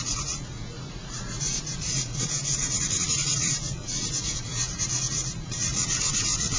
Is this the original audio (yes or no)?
no